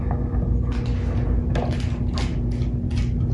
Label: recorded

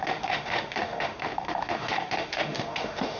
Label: remade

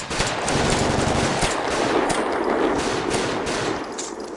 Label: recorded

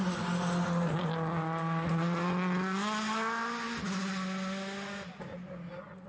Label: recorded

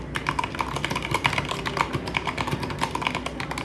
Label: recorded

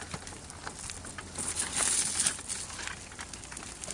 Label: recorded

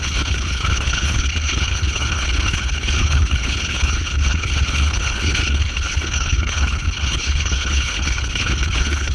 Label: remade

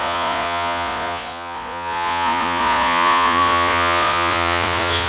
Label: remade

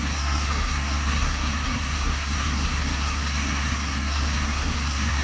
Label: remade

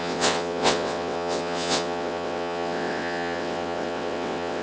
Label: remade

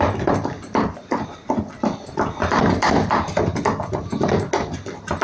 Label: recorded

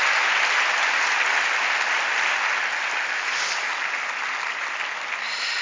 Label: recorded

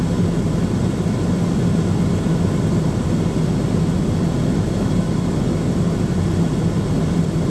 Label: recorded